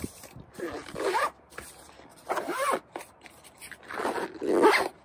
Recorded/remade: recorded